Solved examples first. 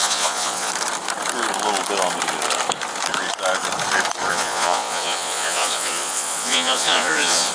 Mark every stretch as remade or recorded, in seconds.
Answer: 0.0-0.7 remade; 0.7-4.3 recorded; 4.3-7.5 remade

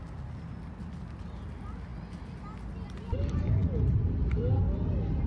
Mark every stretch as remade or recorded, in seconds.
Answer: 0.0-5.3 recorded

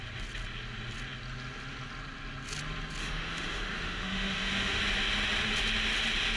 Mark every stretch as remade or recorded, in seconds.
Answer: 0.0-3.0 recorded; 3.0-4.8 remade; 4.8-6.4 recorded